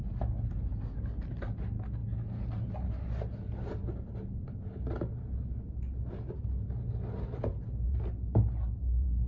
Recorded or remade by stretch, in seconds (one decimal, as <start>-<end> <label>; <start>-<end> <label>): 0.0-7.5 recorded; 7.5-9.3 remade